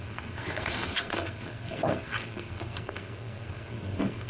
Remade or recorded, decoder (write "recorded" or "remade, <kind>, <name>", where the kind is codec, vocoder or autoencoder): remade, codec, SNAC